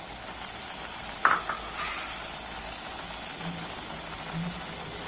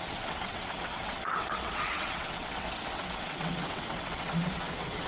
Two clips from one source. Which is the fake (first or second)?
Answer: second